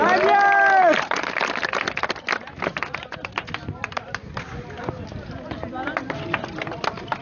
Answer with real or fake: real